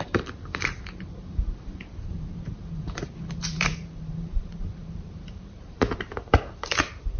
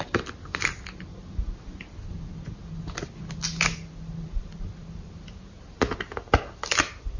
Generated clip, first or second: first